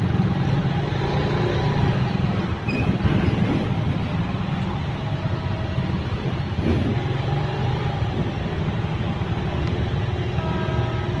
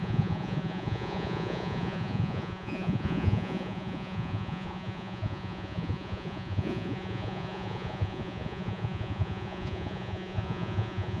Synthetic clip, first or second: second